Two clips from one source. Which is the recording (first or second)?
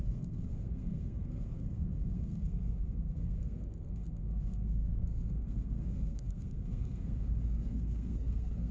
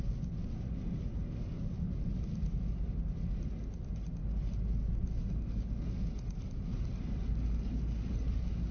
second